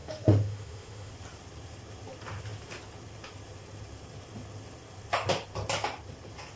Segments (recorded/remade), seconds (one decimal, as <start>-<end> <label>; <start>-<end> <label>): 0.0-1.1 remade; 1.1-6.6 recorded